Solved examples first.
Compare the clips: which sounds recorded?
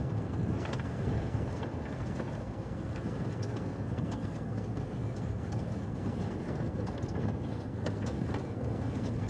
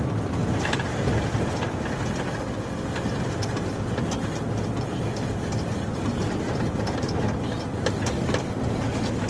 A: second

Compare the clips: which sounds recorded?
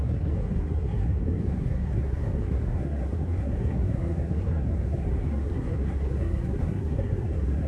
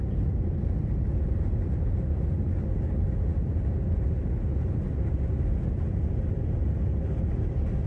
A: second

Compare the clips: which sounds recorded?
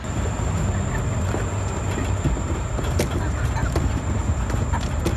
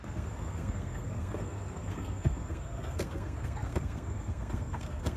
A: first